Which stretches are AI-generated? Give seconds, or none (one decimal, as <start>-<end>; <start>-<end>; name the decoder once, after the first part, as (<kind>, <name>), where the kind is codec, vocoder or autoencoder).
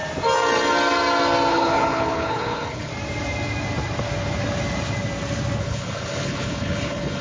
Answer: 1.5-2.9 (codec, HILCodec); 5.6-7.2